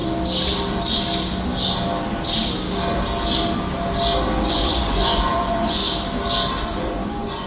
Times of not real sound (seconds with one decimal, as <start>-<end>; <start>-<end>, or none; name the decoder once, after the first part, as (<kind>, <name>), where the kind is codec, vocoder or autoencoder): 4.5-5.8 (vocoder, Vocos); 6.6-7.5